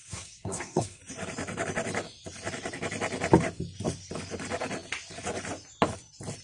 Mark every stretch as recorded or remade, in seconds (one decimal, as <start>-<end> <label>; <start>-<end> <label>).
0.0-1.0 remade; 1.0-6.4 recorded